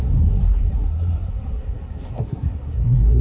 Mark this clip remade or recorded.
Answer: remade